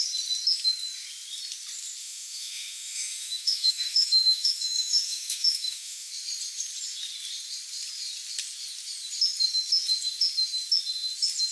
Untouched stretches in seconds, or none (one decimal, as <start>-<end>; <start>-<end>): 0.0-2.0; 6.1-11.5